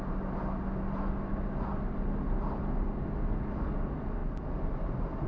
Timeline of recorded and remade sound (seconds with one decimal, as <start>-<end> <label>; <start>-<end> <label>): 0.0-5.3 recorded